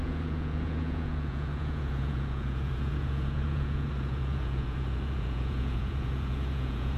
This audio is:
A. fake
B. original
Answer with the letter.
A